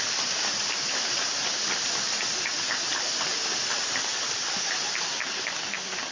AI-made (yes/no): no